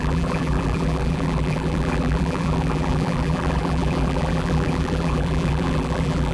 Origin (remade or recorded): remade